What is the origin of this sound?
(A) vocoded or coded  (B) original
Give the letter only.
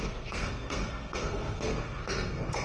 A